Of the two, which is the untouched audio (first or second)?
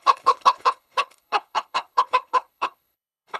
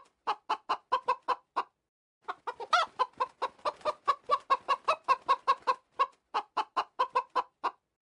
second